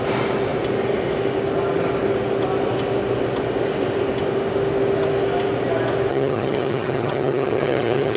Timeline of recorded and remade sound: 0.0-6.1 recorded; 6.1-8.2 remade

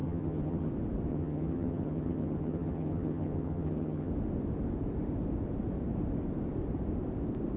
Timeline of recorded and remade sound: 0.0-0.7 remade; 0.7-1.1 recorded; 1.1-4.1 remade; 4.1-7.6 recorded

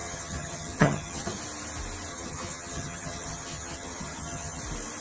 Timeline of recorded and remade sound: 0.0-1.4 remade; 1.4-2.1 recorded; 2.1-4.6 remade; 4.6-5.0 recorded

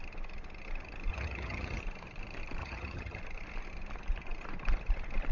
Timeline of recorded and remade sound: 0.0-1.1 recorded; 1.1-1.8 remade; 1.8-2.6 recorded; 2.6-3.2 remade; 3.2-5.3 recorded

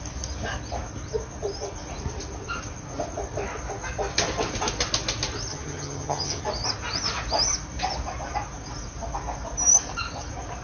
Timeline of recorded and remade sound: 0.0-5.5 recorded; 5.5-6.4 remade; 6.4-10.6 recorded

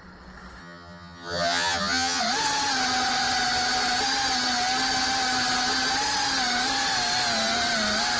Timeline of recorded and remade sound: 0.0-0.6 recorded; 0.6-2.2 remade; 2.2-8.2 recorded

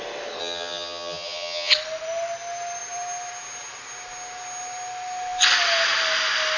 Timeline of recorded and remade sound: 0.0-0.4 recorded; 0.4-1.7 remade; 1.7-6.6 recorded